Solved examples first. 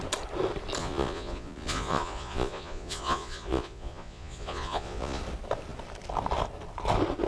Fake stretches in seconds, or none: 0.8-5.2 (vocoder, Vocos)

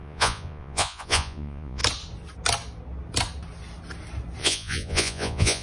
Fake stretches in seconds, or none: 0.0-1.8 (vocoder, Vocos); 4.4-5.6

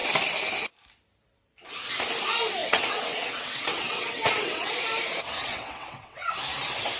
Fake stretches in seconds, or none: 2.6-4.8 (vocoder, WaveNeXt); 5.4-6.3